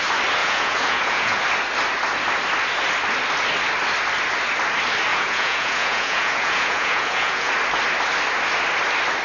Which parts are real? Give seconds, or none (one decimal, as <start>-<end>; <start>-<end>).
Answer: 0.0-0.4; 1.4-5.1; 7.5-9.2